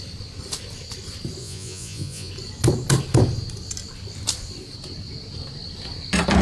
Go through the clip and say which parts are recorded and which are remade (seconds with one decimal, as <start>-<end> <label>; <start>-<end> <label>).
0.0-1.4 recorded; 1.4-2.3 remade; 2.3-6.4 recorded